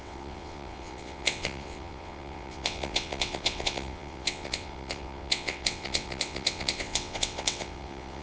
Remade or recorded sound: remade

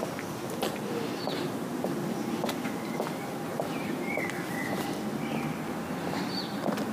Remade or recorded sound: recorded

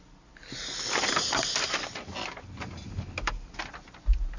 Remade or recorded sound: recorded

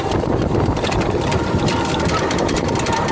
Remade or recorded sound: recorded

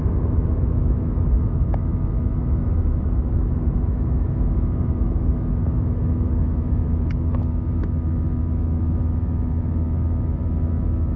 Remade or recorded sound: remade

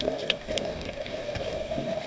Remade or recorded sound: remade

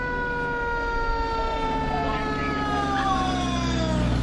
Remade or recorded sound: recorded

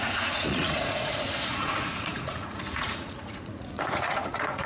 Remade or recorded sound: remade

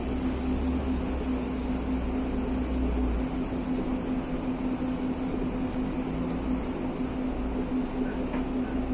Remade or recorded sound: recorded